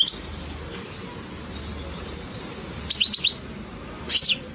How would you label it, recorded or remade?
recorded